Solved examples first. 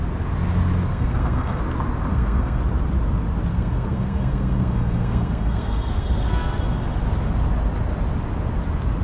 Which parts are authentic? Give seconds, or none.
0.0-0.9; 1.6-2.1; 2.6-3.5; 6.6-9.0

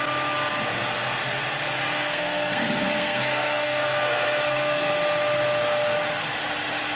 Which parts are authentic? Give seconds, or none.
0.0-1.9; 4.9-7.0